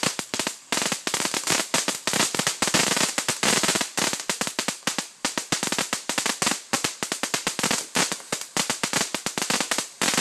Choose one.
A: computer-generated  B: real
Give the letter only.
B